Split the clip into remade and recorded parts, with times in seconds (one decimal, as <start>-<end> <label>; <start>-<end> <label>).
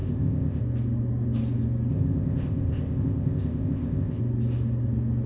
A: 0.0-0.6 remade; 0.6-1.9 recorded; 1.9-4.2 remade; 4.2-5.3 recorded